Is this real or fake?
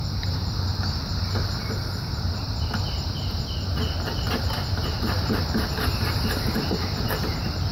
fake